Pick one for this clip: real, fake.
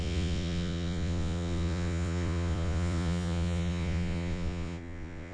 fake